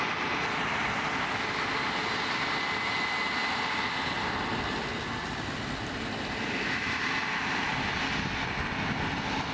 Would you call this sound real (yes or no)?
yes